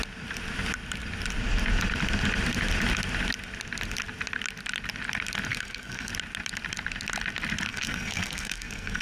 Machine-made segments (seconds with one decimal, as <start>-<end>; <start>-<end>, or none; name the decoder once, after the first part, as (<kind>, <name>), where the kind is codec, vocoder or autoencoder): 5.5-6.1 (codec, SNAC); 7.7-9.0